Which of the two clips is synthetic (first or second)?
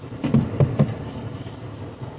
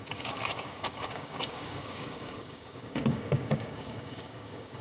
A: second